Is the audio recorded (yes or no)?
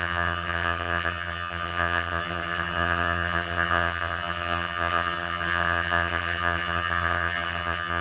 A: no